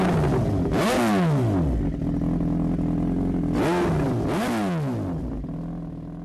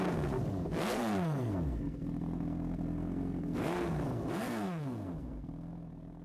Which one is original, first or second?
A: first